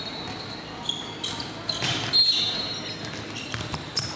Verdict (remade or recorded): recorded